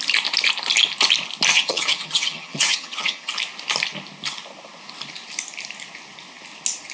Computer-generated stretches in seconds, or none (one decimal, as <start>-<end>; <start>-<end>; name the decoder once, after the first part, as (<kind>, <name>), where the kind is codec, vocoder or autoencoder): 1.5-3.3 (vocoder, HiFi-GAN)